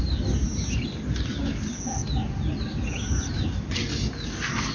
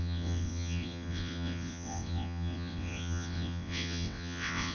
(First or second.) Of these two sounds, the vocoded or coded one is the second